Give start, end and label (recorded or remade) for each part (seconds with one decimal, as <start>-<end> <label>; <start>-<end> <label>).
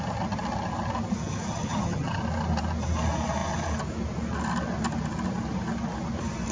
0.0-1.5 recorded; 1.5-2.2 remade; 2.2-6.5 recorded